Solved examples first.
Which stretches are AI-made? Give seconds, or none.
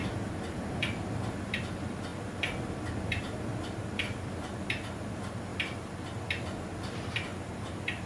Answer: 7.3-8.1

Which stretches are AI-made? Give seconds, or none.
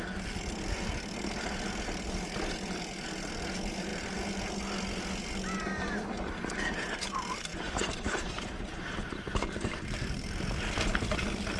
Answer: 7.5-10.1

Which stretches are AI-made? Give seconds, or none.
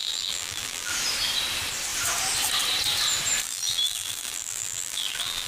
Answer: 0.0-0.9; 3.4-5.5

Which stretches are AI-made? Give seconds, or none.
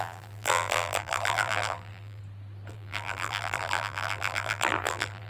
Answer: 0.0-2.2; 2.7-5.3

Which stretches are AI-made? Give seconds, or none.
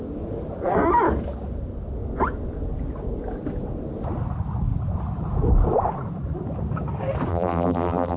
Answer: 7.3-8.2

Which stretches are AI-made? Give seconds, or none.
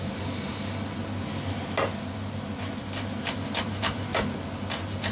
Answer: 0.0-0.5; 3.6-4.1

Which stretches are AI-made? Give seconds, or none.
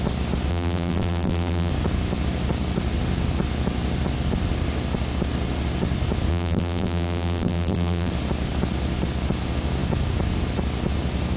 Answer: 0.5-1.7; 6.3-8.1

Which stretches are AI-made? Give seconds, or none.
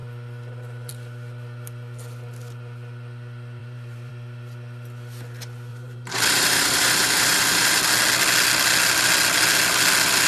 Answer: 3.6-4.1; 5.7-7.8